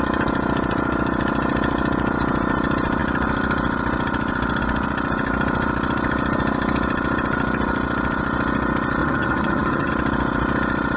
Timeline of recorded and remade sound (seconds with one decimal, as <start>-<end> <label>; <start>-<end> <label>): 0.0-9.0 recorded; 9.0-9.9 remade; 9.9-11.0 recorded